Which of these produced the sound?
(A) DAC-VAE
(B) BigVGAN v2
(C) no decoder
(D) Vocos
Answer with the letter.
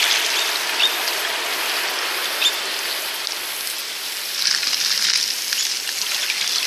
C